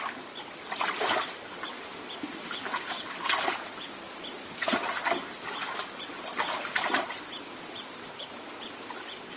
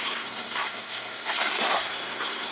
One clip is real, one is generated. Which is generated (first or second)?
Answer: second